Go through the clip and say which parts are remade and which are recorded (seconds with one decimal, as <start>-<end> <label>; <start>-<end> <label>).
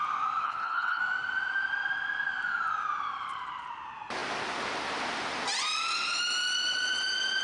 0.0-0.4 recorded; 0.4-1.0 remade; 1.0-7.4 recorded